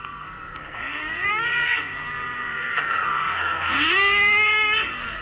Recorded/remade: remade